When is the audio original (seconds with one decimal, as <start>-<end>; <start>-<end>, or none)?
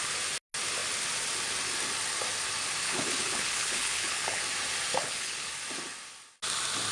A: 0.0-2.8; 4.4-4.9; 5.5-6.9